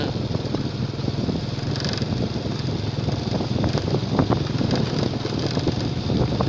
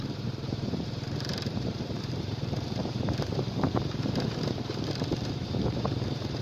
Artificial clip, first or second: second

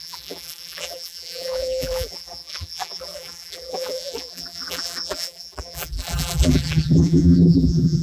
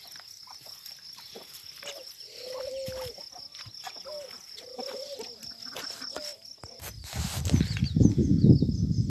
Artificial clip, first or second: first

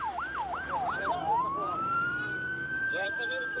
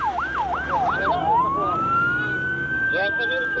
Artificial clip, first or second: first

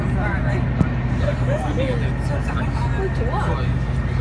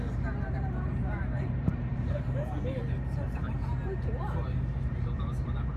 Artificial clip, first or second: second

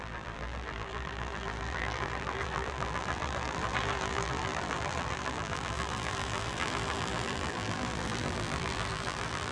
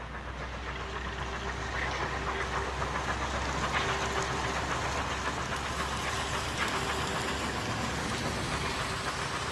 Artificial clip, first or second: first